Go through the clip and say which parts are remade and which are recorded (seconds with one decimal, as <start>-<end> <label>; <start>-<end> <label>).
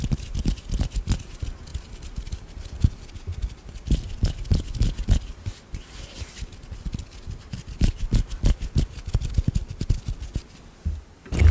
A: 0.0-11.5 recorded